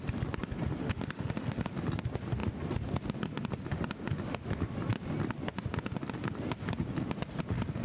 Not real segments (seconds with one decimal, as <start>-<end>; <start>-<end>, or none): 0.8-1.7